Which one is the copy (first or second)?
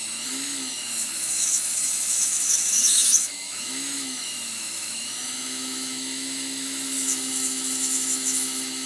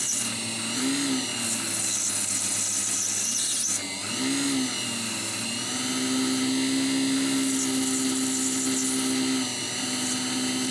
first